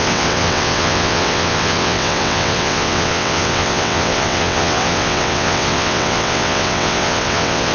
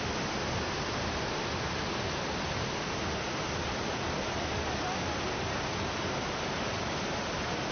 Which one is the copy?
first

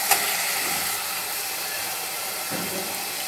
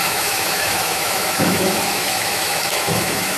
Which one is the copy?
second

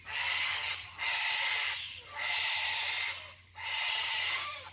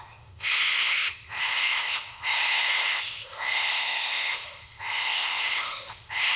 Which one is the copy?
second